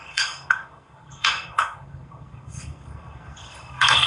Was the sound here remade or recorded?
remade